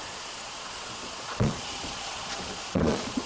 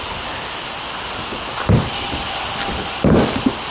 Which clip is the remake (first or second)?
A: first